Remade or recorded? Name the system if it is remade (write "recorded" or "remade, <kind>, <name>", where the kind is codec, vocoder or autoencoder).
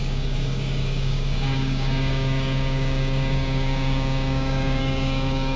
remade, codec, DAC